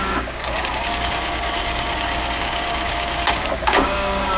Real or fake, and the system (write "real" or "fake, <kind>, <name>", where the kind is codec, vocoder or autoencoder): fake, codec, DAC